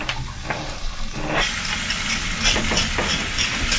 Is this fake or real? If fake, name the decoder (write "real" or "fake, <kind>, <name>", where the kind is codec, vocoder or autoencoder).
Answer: real